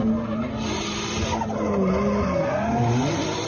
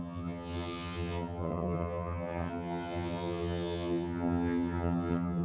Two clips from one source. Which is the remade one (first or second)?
second